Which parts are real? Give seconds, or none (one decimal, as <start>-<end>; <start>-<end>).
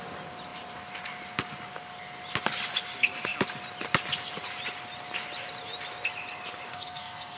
0.0-6.7